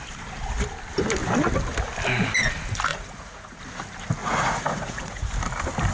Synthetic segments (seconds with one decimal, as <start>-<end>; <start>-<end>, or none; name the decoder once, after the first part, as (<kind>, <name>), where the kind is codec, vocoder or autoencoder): 2.9-3.6 (vocoder, Vocos); 4.2-5.3

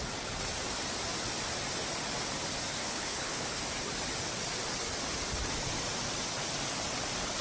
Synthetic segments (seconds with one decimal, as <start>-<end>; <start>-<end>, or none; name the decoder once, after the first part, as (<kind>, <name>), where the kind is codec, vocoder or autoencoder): 2.8-3.6 (codec, HILCodec)

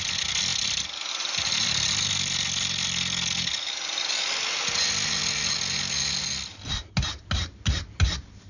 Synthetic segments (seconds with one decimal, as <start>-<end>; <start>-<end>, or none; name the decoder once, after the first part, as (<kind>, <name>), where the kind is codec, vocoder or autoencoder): none

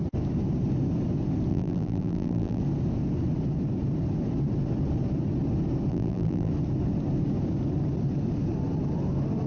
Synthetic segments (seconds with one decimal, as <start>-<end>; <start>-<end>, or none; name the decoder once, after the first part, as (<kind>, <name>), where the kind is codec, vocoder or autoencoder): 1.5-2.6 (vocoder, BigVGAN v2); 5.9-6.5

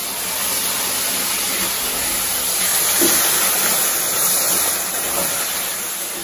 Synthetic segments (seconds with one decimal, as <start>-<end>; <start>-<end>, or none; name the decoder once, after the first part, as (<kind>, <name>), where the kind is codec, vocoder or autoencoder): none

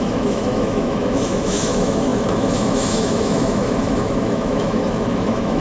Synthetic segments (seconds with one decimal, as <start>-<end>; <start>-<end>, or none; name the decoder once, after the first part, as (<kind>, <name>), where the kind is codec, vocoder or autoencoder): 0.0-5.6 (autoencoder, DAC-VAE)

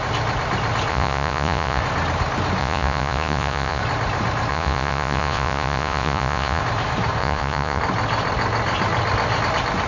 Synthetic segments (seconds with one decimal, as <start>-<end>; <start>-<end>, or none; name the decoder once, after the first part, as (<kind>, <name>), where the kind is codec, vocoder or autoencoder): 0.9-1.8 (vocoder, Vocos); 2.6-3.8; 4.5-6.6; 7.2-7.8